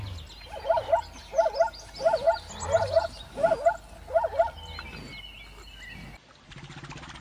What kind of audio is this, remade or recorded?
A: recorded